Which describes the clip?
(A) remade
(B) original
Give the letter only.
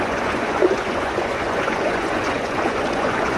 A